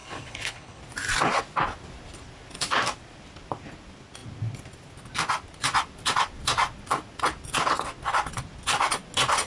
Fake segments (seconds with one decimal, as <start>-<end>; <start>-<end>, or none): 0.0-0.8